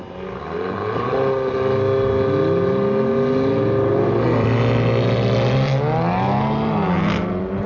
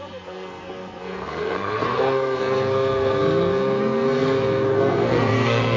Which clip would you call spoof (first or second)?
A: second